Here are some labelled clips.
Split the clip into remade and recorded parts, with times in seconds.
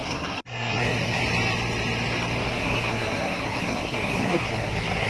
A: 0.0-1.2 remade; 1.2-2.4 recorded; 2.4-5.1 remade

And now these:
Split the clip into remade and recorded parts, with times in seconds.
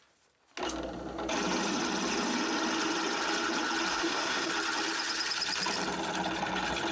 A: 0.0-3.9 recorded; 3.9-4.5 remade; 4.5-6.9 recorded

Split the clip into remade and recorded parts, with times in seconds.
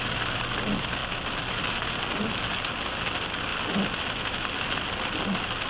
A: 0.0-5.7 recorded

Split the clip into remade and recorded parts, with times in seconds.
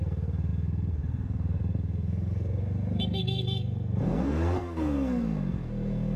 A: 0.0-6.2 remade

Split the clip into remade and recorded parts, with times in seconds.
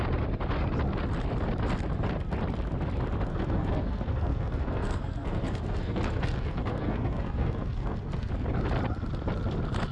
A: 0.0-3.3 recorded; 3.3-8.3 remade; 8.3-9.9 recorded